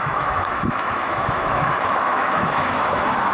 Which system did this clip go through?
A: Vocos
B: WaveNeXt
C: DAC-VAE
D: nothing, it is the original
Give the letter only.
C